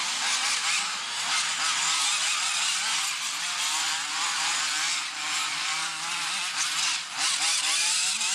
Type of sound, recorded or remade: recorded